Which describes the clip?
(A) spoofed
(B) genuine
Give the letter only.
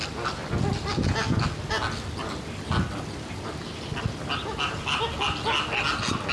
B